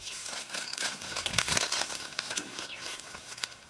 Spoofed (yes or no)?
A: yes